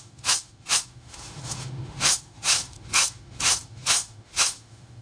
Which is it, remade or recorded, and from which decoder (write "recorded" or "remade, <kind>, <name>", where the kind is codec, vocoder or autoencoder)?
remade, autoencoder, DAC-VAE